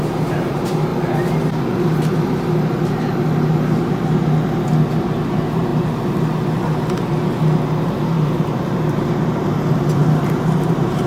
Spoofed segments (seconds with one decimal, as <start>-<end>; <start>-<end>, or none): 0.0-0.9; 5.0-5.7; 7.8-11.1